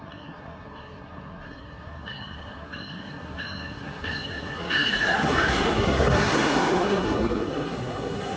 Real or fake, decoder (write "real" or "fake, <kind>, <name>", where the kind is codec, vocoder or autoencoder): fake, codec, SNAC